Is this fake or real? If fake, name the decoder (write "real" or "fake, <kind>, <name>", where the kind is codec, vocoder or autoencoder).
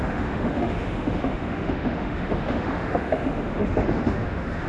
fake, autoencoder, DAC-VAE